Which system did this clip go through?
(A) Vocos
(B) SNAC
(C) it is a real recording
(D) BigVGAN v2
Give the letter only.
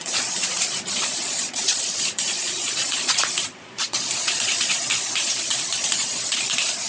A